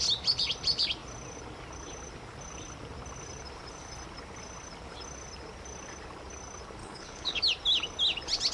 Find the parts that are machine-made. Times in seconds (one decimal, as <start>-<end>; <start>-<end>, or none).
6.8-7.4